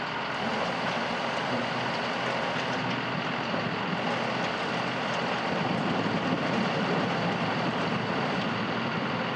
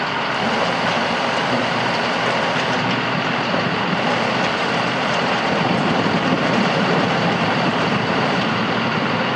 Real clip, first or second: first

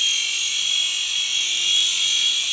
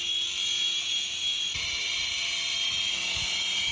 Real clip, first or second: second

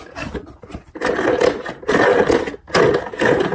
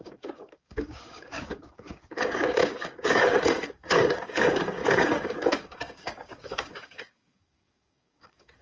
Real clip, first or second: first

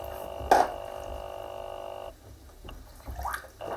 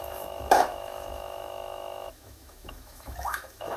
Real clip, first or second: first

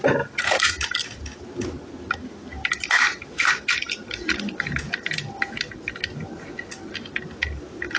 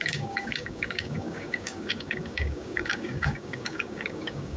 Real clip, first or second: first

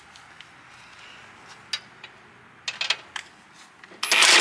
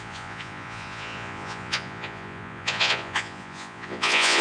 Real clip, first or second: first